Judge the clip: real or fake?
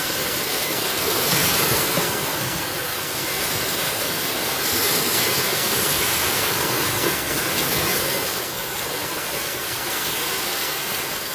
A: fake